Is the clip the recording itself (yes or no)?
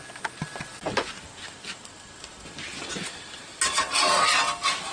yes